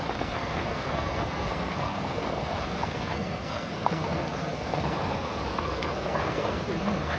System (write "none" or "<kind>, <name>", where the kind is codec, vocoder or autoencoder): codec, SNAC